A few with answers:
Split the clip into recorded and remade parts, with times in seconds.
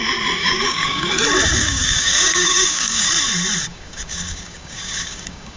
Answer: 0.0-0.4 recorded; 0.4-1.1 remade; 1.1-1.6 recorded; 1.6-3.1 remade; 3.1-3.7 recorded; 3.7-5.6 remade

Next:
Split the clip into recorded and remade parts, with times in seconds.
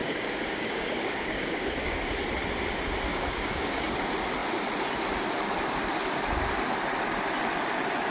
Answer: 0.0-2.1 remade; 2.1-3.1 recorded; 3.1-3.8 remade; 3.8-8.1 recorded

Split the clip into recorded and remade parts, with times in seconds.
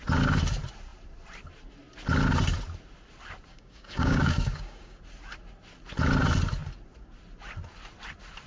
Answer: 0.0-3.5 recorded; 3.5-5.0 remade; 5.0-8.5 recorded